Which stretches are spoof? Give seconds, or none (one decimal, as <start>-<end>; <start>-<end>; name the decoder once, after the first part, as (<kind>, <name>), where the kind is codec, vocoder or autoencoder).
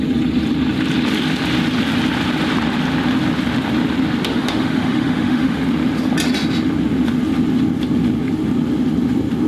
4.3-5.6 (autoencoder, DAC-VAE)